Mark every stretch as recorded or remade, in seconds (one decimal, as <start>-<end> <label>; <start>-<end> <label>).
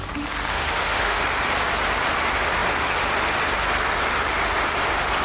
0.0-0.5 recorded; 0.5-1.2 remade; 1.2-5.2 recorded